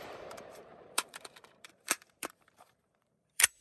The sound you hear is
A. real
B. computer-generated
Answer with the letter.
B